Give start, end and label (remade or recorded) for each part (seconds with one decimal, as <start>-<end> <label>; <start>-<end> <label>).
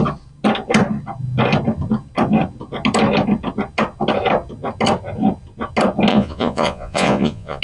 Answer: 0.0-6.1 recorded; 6.1-7.6 remade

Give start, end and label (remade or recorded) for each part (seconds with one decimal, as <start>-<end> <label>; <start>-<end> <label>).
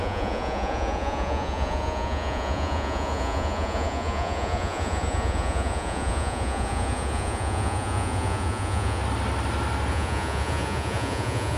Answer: 0.0-9.0 remade; 9.0-9.9 recorded; 9.9-11.6 remade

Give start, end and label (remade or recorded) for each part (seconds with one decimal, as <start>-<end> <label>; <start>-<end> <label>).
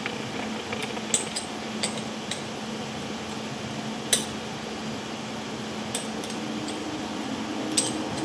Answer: 0.0-8.2 recorded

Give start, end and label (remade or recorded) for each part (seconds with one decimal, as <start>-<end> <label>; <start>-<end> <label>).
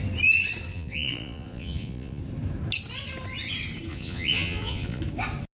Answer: 0.0-0.7 recorded; 0.7-2.2 remade; 2.2-3.9 recorded; 3.9-5.0 remade; 5.0-5.5 recorded